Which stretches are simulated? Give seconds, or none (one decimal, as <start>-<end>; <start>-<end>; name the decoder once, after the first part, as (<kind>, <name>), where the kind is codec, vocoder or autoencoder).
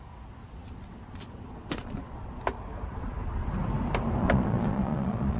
0.4-2.4 (vocoder, Vocos); 2.9-3.5; 4.2-5.4